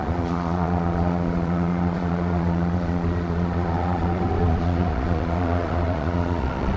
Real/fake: fake